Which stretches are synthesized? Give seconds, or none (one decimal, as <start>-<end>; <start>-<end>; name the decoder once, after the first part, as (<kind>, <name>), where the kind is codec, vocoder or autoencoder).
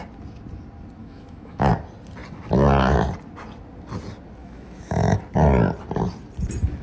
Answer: 1.0-1.7 (autoencoder, DAC-VAE); 4.4-5.2